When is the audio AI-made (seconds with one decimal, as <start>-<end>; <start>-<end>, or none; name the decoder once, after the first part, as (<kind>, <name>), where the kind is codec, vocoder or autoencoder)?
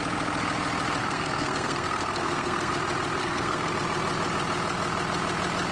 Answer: 1.0-2.7 (codec, SNAC); 3.2-3.7